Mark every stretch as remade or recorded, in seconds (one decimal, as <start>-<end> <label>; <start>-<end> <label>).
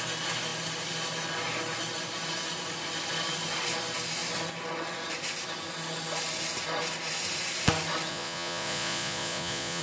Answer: 0.0-8.1 recorded; 8.1-9.8 remade